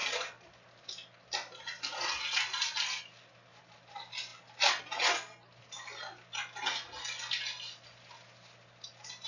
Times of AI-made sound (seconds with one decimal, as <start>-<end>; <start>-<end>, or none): none

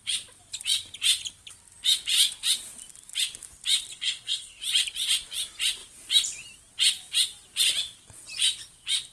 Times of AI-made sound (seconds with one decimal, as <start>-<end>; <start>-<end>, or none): 3.9-4.6

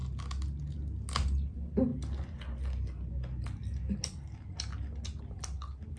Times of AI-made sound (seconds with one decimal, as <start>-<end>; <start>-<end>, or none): none